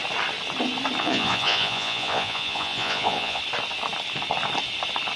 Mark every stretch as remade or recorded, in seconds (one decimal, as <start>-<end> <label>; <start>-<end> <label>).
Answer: 0.0-1.0 recorded; 1.0-3.4 remade; 3.4-5.2 recorded